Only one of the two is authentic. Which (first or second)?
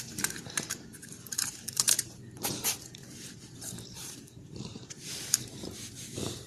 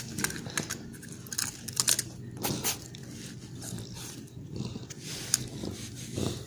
second